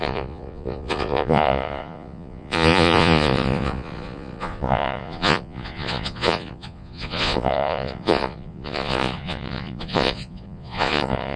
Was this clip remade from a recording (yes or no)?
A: yes